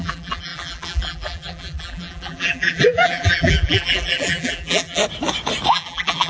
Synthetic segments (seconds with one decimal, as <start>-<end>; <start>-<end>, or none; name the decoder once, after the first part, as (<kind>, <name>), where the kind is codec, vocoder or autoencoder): 0.0-5.0 (vocoder, BigVGAN v2); 5.7-6.3